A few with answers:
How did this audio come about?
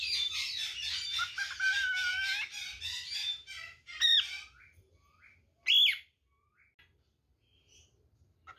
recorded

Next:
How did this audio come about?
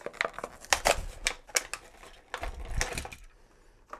recorded